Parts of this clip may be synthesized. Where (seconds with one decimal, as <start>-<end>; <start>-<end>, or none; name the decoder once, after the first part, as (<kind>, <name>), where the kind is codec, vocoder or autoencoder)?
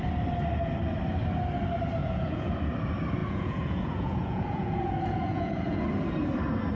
2.0-2.5 (vocoder, Vocos); 3.2-5.9